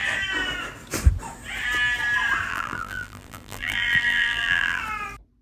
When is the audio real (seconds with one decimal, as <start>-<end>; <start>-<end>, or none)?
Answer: 0.0-2.5; 4.8-5.4